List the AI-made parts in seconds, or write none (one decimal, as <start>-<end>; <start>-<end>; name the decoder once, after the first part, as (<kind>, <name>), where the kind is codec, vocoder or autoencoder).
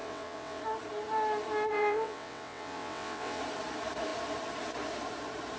0.0-0.6 (vocoder, WaveNeXt); 1.7-3.4